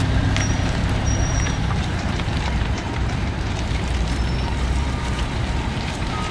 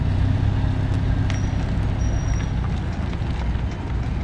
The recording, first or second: second